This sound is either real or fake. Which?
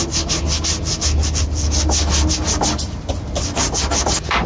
real